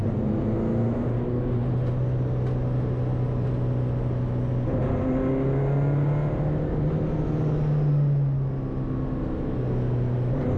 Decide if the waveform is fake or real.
real